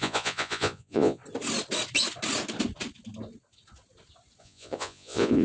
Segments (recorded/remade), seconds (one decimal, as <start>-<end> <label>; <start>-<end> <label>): 0.0-1.2 remade; 1.2-4.4 recorded; 4.4-5.4 remade